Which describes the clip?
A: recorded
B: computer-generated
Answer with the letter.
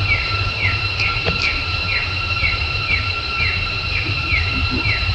B